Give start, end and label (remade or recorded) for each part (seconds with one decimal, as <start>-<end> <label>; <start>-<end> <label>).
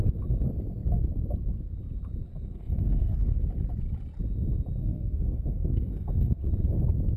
0.0-2.3 recorded; 2.3-3.4 remade; 3.4-4.8 recorded; 4.8-6.5 remade; 6.5-7.2 recorded